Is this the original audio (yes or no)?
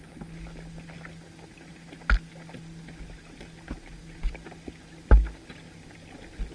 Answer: yes